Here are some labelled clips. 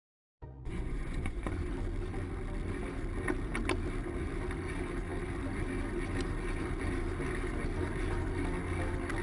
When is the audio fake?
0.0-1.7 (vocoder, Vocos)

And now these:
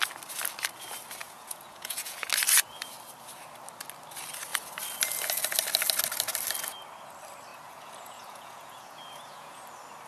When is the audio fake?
1.2-2.3 (vocoder, Vocos); 7.5-9.6

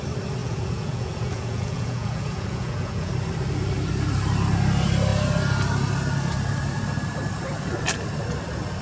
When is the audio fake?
0.4-3.1 (vocoder, Vocos)

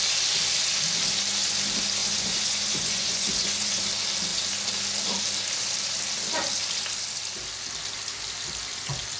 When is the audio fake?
2.0-3.8 (vocoder, Vocos)